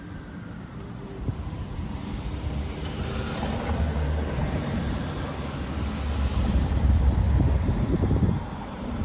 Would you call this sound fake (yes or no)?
yes